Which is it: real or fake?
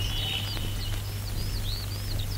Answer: real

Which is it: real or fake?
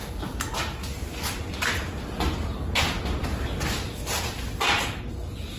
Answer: real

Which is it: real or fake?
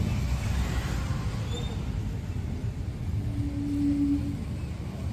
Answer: real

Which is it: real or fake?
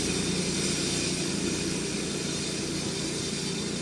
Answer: real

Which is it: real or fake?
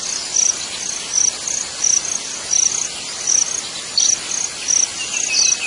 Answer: real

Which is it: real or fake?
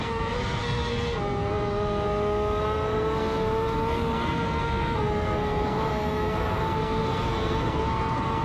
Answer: fake